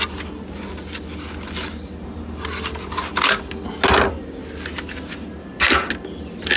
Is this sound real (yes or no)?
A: yes